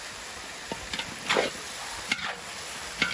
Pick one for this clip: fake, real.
real